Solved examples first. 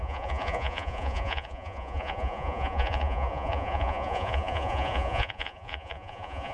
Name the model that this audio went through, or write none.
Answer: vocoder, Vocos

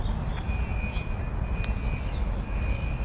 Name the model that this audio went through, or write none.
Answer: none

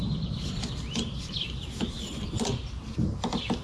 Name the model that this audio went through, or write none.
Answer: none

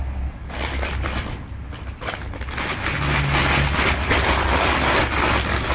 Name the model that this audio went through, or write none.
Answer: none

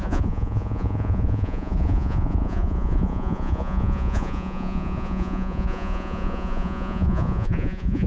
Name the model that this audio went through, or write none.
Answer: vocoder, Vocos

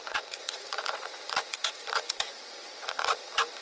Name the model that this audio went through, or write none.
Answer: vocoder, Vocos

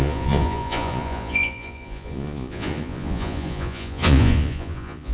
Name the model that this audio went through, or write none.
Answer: vocoder, Vocos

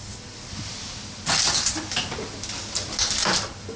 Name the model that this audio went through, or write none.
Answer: none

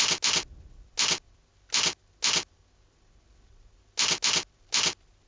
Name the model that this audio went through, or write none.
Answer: none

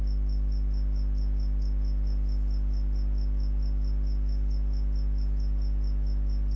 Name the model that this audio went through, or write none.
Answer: none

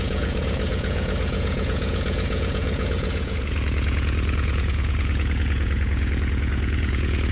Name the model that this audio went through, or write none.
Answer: vocoder, Vocos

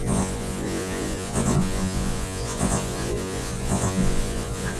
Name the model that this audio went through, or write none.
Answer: vocoder, Vocos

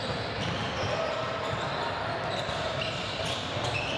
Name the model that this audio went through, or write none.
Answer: none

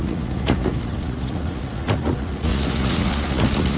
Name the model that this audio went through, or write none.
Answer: vocoder, Vocos